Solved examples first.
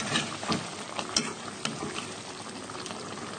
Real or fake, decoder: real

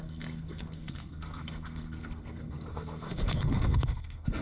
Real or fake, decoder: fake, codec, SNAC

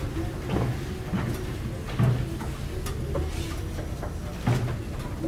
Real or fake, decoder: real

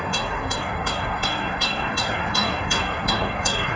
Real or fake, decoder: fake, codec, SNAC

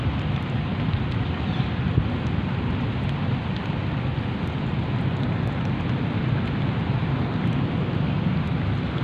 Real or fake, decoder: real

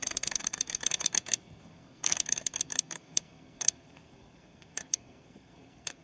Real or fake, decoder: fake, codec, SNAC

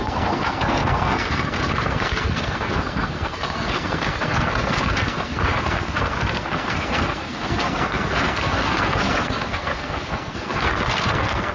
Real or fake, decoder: fake, codec, SNAC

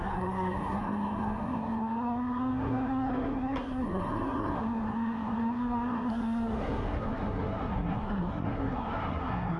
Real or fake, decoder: fake, codec, SNAC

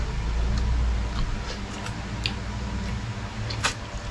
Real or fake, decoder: real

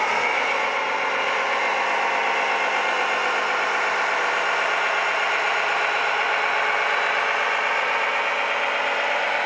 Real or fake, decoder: real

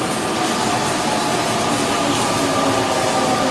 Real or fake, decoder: real